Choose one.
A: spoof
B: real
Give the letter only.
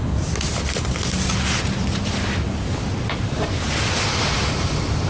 B